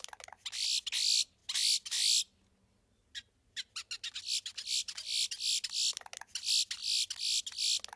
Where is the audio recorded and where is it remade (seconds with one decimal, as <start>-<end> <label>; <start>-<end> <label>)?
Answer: 0.0-8.0 recorded